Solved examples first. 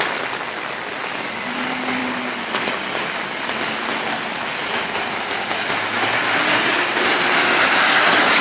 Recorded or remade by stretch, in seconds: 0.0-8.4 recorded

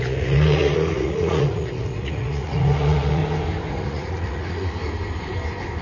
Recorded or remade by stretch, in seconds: 0.0-3.2 remade; 3.2-3.7 recorded; 3.7-4.8 remade; 4.8-5.8 recorded

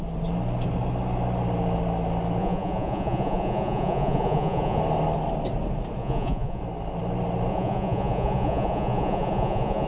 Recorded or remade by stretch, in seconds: 0.0-2.4 recorded; 2.4-4.8 remade; 4.8-6.0 recorded; 6.0-6.6 remade; 6.6-7.5 recorded; 7.5-9.9 remade

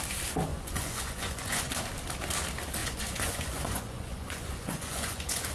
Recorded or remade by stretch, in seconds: 0.0-0.5 recorded; 0.5-1.7 remade; 1.7-2.8 recorded; 2.8-5.5 remade

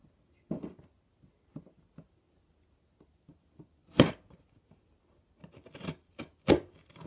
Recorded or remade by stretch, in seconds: 0.0-7.1 recorded

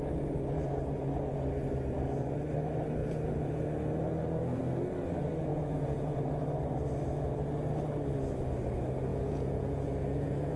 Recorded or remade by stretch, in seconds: 0.0-3.0 recorded; 3.0-3.6 remade; 3.6-4.0 recorded; 4.0-4.6 remade; 4.6-5.5 recorded; 5.5-6.2 remade; 6.2-9.1 recorded; 9.1-10.6 remade